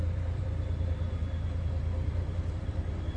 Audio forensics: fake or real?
fake